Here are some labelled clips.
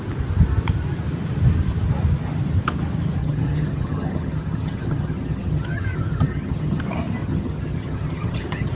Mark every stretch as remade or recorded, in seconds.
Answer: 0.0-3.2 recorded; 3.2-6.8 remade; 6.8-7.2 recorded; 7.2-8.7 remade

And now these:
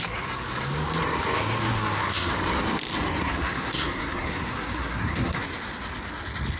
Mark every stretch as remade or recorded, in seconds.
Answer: 0.0-1.7 recorded; 1.7-2.3 remade; 2.3-3.2 recorded; 3.2-5.4 remade; 5.4-6.6 recorded